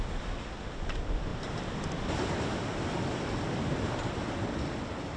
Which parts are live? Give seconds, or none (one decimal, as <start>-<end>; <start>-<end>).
0.0-5.2